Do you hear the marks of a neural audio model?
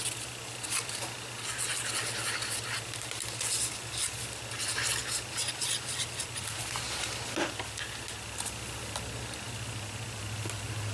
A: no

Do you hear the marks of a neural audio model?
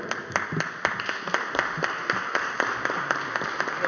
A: no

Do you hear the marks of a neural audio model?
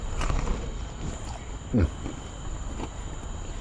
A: no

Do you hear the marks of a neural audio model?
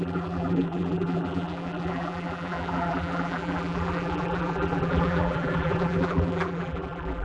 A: yes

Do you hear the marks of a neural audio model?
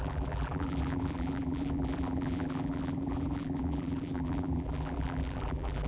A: yes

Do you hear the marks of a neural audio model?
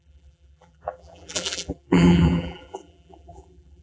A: yes